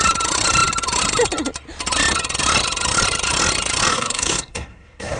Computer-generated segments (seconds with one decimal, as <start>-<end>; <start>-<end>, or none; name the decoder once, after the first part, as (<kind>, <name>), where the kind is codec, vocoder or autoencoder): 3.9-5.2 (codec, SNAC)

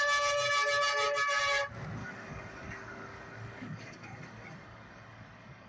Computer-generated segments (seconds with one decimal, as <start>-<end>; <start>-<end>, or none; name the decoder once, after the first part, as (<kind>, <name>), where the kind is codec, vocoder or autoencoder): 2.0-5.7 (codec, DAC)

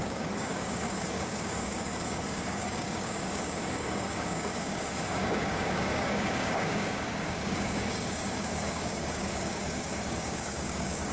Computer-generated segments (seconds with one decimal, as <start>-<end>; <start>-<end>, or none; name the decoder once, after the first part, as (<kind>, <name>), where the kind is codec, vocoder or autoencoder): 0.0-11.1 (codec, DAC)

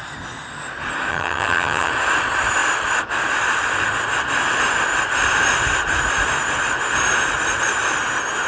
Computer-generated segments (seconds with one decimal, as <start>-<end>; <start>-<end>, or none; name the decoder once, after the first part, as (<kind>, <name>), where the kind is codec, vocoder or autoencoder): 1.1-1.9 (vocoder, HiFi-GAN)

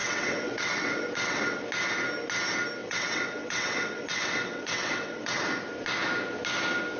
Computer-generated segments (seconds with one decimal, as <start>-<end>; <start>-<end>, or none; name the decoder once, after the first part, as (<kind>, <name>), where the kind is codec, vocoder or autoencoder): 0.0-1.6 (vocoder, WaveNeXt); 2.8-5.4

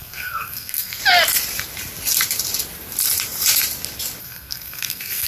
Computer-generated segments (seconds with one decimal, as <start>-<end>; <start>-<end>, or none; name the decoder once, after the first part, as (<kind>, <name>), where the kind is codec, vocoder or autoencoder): 0.0-1.0 (codec, SNAC); 4.2-5.3

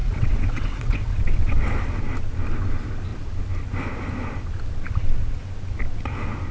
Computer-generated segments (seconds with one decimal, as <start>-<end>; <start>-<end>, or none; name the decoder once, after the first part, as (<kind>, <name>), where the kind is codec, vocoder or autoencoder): 0.0-2.0 (vocoder, WaveNeXt)

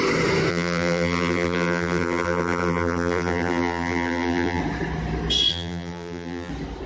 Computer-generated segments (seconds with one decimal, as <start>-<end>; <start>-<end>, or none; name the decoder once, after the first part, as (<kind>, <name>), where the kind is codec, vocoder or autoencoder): 0.5-4.6 (vocoder, BigVGAN v2); 5.5-6.5